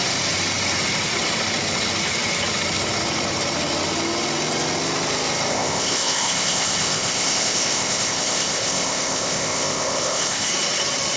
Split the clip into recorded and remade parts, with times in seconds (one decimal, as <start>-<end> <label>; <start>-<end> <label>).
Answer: 0.0-5.5 recorded; 5.5-10.5 remade; 10.5-11.2 recorded